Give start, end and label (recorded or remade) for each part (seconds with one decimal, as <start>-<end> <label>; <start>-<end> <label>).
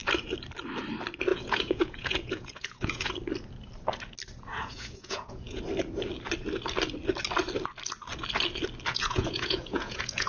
0.0-1.3 recorded; 1.3-3.1 remade; 3.1-4.5 recorded; 4.5-5.6 remade; 5.6-8.9 recorded; 8.9-10.3 remade